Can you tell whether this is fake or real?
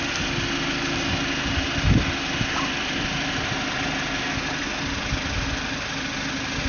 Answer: real